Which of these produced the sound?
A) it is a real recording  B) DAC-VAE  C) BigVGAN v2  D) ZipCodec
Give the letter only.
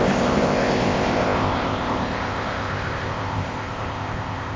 D